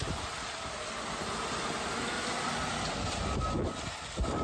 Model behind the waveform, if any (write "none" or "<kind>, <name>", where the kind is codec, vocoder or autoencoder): none